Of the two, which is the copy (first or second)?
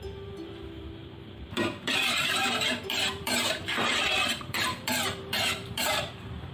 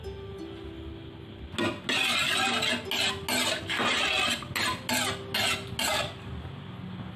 first